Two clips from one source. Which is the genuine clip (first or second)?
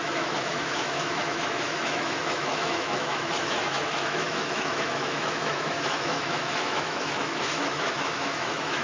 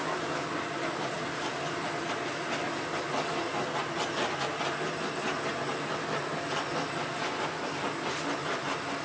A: second